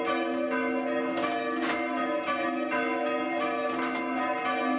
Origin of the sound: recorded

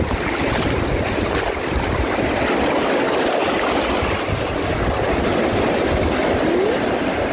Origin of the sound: recorded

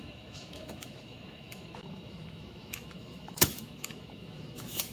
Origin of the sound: remade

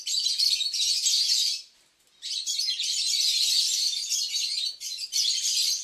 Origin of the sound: recorded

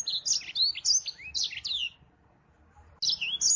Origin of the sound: recorded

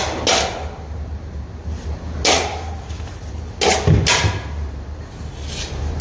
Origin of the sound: recorded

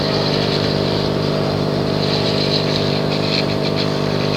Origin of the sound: remade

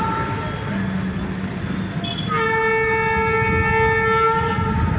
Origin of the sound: recorded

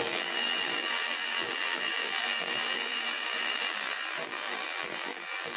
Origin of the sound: remade